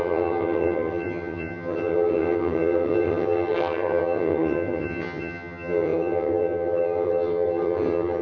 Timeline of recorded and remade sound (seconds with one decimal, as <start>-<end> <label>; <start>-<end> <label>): 0.0-8.2 remade